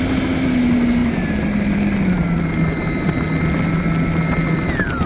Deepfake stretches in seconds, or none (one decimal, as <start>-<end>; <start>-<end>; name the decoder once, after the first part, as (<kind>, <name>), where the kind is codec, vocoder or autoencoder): none

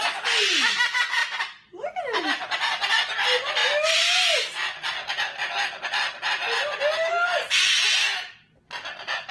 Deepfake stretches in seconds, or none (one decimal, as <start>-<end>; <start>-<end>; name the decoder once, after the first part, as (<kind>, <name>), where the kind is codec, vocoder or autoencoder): none

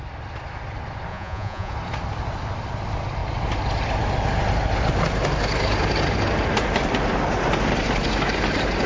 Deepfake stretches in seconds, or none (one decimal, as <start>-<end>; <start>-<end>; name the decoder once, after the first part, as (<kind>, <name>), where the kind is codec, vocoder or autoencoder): 1.1-1.7 (vocoder, Vocos)